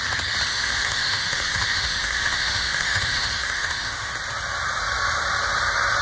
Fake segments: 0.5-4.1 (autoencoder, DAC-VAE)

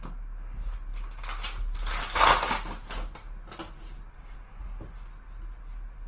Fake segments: none

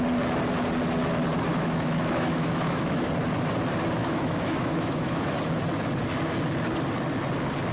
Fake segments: 1.5-3.1 (autoencoder, DAC-VAE); 4.0-5.3